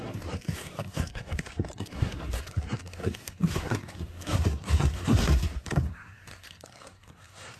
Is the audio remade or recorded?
remade